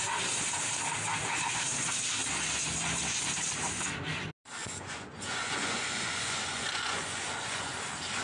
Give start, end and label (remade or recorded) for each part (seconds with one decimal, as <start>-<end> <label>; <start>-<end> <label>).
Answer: 0.0-4.6 recorded; 4.6-7.7 remade; 7.7-8.2 recorded